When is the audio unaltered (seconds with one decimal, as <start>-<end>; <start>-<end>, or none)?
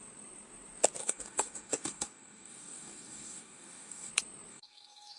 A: 0.0-1.0; 4.1-4.5